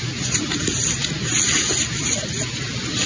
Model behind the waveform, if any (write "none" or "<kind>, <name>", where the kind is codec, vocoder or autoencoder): none